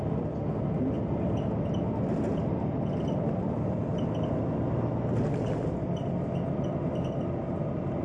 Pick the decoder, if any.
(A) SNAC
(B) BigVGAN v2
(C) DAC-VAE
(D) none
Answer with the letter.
D